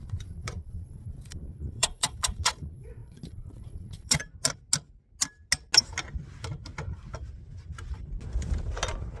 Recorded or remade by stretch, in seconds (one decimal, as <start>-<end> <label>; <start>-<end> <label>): 0.0-4.2 remade; 4.2-9.2 recorded